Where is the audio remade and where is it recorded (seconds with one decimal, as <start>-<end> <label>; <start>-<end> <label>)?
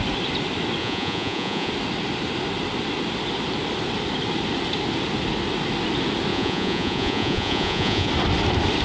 0.0-0.8 recorded; 0.8-1.7 remade; 1.7-6.3 recorded; 6.3-8.1 remade; 8.1-8.8 recorded